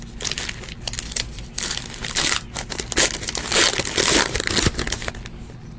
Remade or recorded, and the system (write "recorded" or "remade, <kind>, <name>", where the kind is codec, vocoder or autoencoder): recorded